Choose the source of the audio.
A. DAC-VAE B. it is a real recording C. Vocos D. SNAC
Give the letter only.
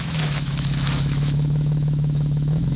A